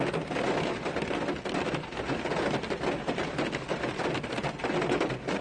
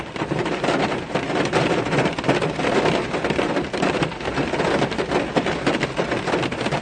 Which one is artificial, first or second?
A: second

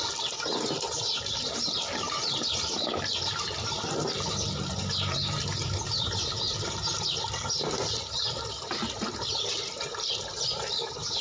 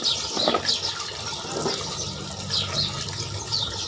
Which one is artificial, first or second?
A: first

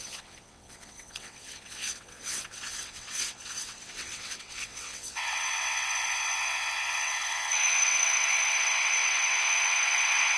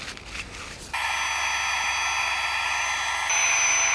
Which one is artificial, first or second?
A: first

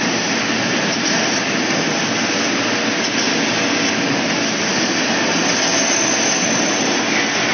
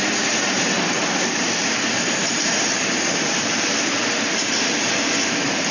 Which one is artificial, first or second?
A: second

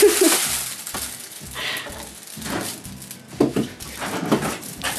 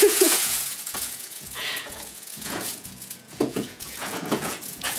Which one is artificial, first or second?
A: second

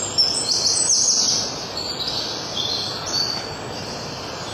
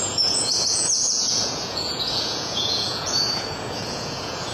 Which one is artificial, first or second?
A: second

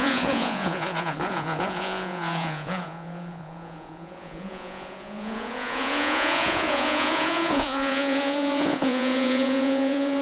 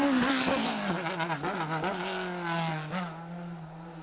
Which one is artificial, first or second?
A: first